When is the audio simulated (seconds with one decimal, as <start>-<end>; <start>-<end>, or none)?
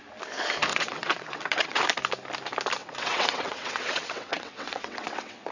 0.7-1.8; 2.8-5.5